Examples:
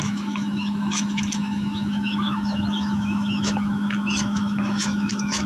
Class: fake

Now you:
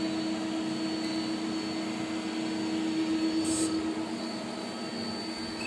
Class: real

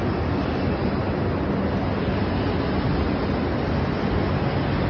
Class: real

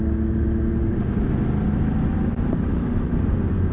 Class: real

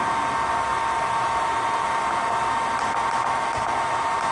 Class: real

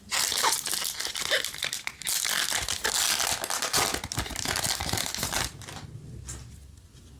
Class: real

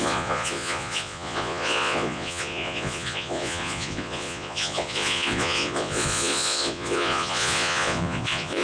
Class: fake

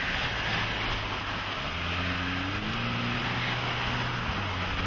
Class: real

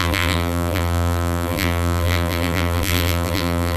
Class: fake